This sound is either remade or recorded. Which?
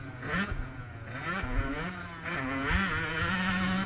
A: remade